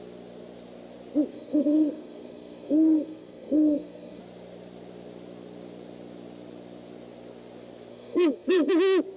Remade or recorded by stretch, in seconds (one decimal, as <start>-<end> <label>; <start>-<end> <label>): 0.0-1.3 recorded; 1.3-4.2 remade; 4.2-7.9 recorded; 7.9-8.7 remade; 8.7-9.2 recorded